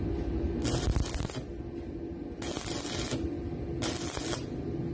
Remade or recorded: recorded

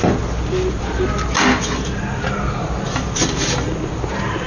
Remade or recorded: recorded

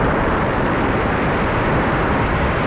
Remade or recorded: recorded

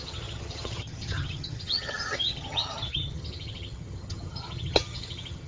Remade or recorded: remade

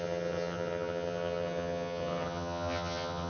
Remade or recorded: remade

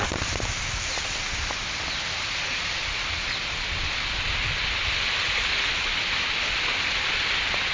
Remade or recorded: recorded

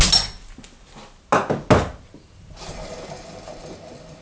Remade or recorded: recorded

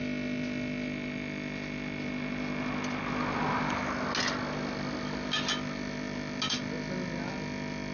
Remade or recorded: recorded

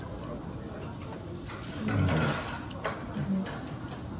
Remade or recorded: recorded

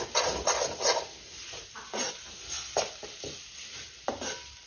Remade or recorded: recorded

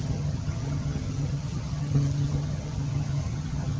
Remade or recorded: remade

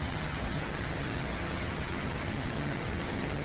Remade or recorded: remade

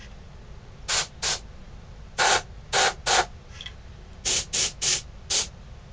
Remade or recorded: recorded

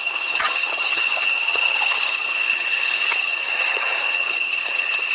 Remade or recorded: remade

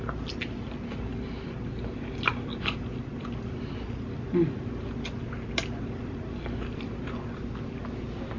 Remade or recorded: recorded